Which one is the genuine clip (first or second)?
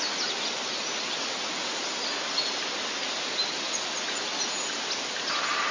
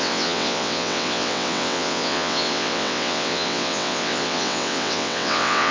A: first